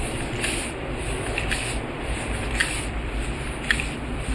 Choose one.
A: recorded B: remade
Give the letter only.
B